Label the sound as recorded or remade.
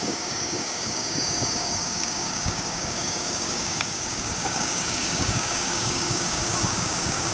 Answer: remade